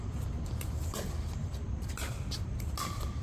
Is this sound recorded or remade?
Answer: recorded